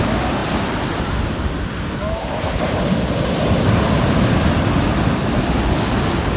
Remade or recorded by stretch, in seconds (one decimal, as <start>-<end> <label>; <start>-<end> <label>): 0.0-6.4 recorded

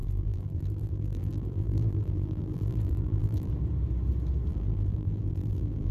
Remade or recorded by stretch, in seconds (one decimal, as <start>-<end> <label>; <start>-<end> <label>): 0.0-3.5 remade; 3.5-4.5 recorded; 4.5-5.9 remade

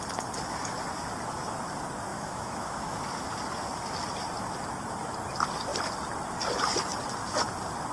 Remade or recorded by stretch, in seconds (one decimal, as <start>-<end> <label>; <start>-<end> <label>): 0.0-2.1 recorded; 2.1-3.0 remade; 3.0-7.9 recorded

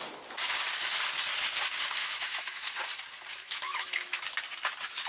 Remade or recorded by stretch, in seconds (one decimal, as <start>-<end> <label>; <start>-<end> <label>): 0.0-2.0 recorded; 2.0-2.7 remade; 2.7-3.3 recorded; 3.3-4.2 remade; 4.2-5.1 recorded

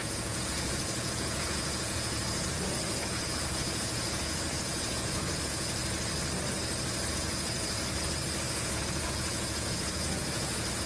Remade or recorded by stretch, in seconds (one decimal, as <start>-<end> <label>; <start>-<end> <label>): 0.0-5.8 remade; 5.8-7.1 recorded; 7.1-7.8 remade; 7.8-8.5 recorded; 8.5-10.9 remade